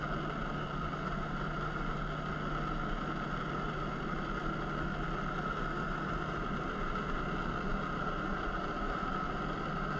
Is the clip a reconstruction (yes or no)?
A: no